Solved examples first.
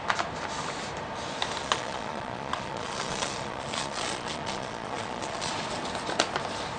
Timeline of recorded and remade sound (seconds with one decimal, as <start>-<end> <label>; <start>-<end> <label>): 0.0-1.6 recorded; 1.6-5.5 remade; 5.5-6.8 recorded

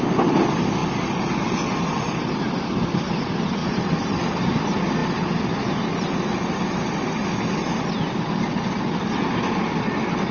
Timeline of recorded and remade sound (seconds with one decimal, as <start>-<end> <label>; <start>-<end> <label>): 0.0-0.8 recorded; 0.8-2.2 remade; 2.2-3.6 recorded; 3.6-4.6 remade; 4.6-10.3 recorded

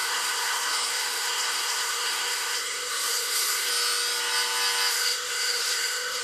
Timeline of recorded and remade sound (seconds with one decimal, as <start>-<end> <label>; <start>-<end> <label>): 0.0-3.7 remade; 3.7-4.9 recorded; 4.9-6.2 remade